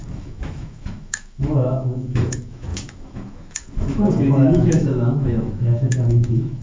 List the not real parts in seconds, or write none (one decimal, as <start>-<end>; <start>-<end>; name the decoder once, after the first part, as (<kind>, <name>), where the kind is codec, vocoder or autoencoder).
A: 0.0-6.6 (autoencoder, DAC-VAE)